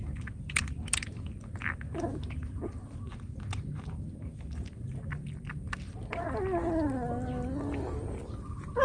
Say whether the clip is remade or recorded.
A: recorded